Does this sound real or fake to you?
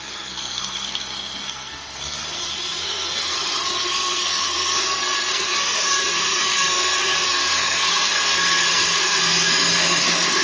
fake